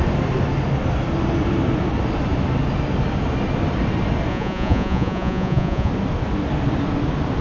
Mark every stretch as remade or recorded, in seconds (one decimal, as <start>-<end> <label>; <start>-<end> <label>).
0.0-4.3 recorded; 4.3-5.9 remade; 5.9-7.4 recorded